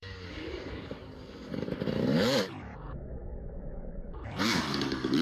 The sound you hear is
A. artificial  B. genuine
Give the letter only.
A